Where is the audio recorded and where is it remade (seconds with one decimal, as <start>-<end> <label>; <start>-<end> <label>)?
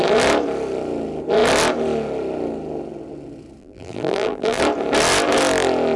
0.0-3.6 recorded; 3.6-4.6 remade; 4.6-6.0 recorded